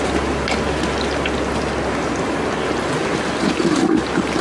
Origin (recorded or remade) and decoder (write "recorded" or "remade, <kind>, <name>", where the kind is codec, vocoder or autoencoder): recorded